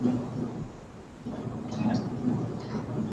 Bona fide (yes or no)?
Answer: yes